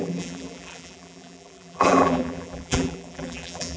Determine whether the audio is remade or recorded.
remade